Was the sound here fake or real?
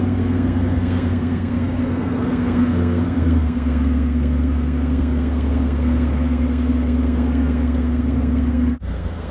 fake